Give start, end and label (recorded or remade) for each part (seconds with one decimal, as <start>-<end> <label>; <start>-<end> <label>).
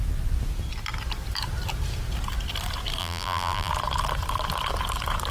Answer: 0.0-3.0 recorded; 3.0-3.7 remade; 3.7-5.3 recorded